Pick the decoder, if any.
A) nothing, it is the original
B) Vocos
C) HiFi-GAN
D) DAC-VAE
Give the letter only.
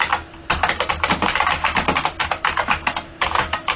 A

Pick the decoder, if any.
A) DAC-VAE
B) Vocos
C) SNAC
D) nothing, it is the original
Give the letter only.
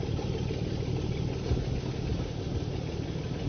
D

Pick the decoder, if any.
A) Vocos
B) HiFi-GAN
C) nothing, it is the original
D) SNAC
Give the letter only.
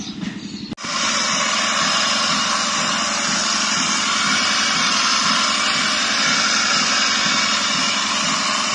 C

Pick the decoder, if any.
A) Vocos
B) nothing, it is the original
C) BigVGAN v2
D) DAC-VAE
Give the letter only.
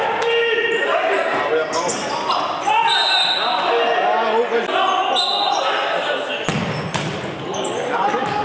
B